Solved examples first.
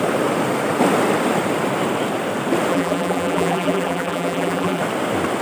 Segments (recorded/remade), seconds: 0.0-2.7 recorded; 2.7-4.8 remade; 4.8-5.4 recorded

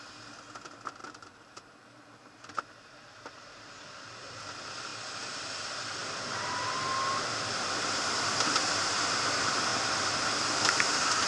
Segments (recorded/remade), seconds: 0.0-1.0 recorded; 1.0-3.5 remade; 3.5-11.3 recorded

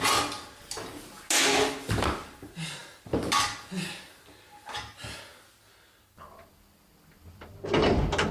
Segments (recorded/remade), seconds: 0.0-8.3 recorded

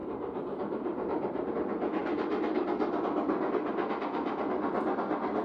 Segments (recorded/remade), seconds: 0.0-1.5 remade; 1.5-5.4 recorded

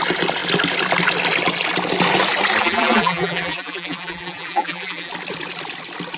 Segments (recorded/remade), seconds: 0.0-2.6 recorded; 2.6-5.1 remade; 5.1-6.2 recorded

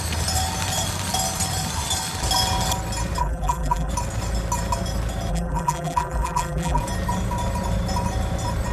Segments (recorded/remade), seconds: 0.0-3.2 recorded; 3.2-3.9 remade; 3.9-5.3 recorded; 5.3-6.8 remade; 6.8-8.7 recorded

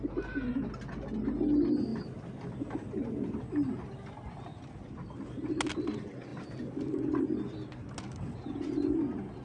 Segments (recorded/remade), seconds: 0.0-6.3 recorded; 6.3-7.2 remade; 7.2-9.4 recorded